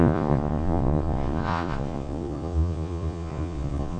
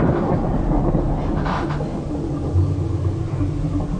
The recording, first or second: second